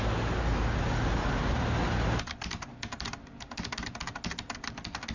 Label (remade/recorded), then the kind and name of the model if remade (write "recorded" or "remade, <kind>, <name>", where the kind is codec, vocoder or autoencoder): recorded